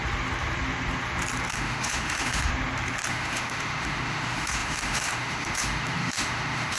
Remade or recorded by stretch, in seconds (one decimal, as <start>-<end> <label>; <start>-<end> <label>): 0.0-1.5 recorded; 1.5-2.5 remade; 2.5-3.1 recorded; 3.1-6.8 remade